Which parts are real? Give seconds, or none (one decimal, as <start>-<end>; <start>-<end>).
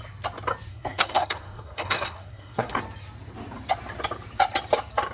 0.0-0.7; 2.8-5.1